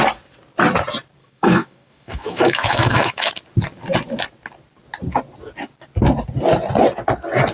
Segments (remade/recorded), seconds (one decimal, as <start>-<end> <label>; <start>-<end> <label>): 0.0-1.2 recorded; 1.2-3.3 remade; 3.3-7.5 recorded